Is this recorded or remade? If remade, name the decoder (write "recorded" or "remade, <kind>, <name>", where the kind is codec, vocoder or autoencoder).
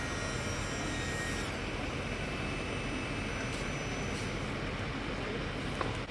recorded